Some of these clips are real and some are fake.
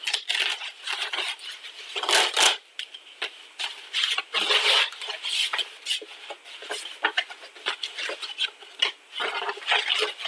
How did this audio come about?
real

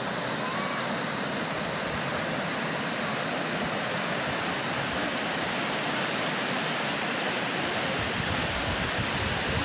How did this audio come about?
real